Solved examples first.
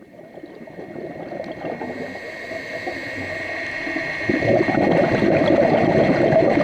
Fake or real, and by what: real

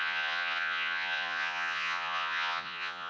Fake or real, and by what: fake, vocoder, Vocos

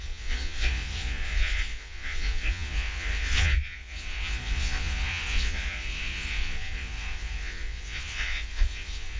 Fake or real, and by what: fake, vocoder, Vocos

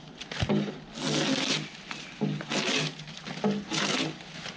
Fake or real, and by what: real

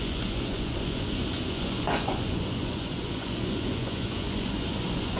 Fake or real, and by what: fake, vocoder, Vocos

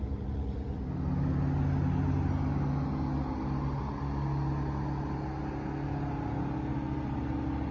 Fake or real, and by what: real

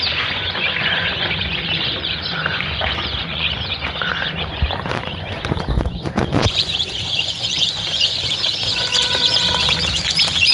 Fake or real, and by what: fake, vocoder, Vocos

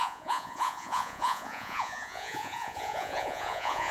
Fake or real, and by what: fake, vocoder, Vocos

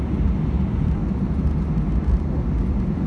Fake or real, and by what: real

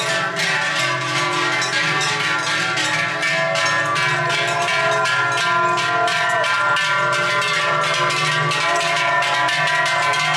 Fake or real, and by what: real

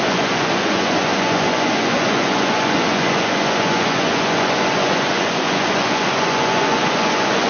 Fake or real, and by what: fake, vocoder, Vocos